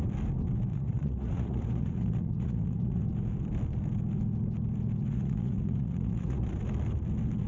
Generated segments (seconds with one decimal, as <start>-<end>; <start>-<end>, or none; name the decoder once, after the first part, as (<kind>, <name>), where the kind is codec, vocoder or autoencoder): 0.7-3.0 (vocoder, Vocos); 5.1-6.6